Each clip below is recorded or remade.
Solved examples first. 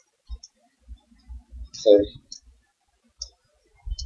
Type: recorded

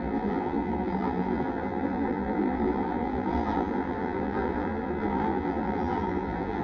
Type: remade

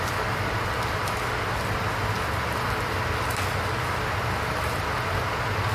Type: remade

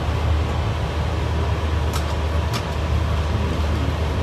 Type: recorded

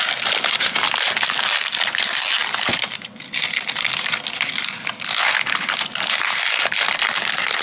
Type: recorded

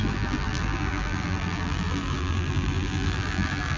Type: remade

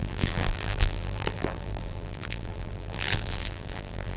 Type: remade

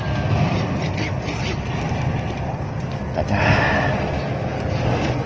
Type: remade